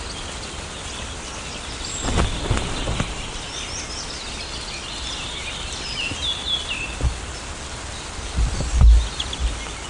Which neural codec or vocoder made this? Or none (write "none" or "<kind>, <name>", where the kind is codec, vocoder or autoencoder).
none